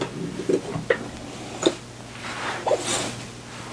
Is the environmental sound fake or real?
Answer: real